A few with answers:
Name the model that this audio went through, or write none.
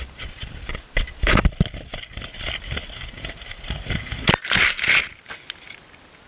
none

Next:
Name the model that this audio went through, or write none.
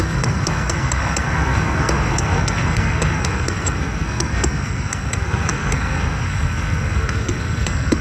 codec, SNAC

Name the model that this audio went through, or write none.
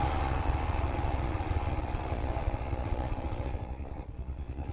vocoder, Vocos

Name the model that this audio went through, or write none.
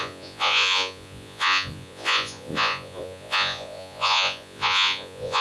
vocoder, Vocos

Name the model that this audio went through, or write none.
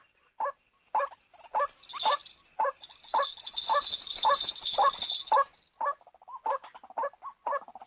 none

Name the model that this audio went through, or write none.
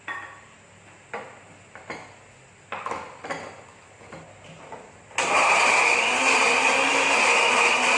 none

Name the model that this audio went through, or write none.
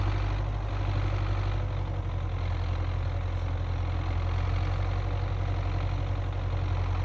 none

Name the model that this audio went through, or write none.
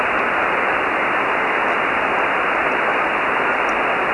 none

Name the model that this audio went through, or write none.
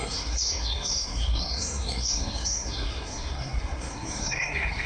codec, SNAC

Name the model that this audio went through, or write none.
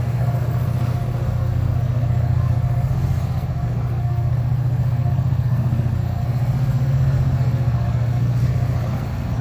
codec, SNAC